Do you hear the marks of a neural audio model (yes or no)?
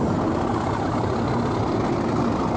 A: no